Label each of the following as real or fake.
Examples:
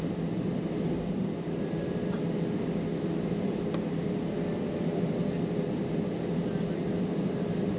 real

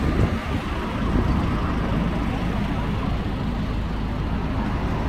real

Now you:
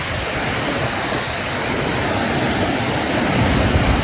real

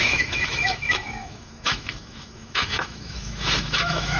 fake